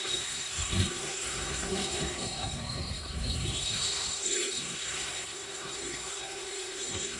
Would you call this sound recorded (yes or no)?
no